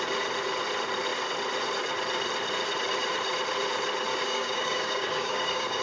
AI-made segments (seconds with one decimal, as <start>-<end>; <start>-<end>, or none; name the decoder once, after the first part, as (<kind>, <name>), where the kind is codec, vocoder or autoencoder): 4.1-5.8 (codec, DAC)